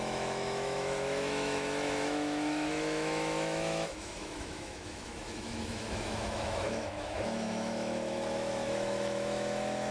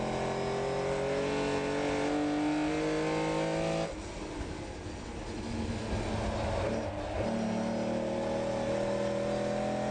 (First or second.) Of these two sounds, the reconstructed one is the first